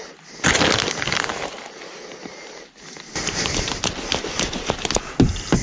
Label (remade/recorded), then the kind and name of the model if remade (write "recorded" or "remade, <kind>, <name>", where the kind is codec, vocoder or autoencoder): recorded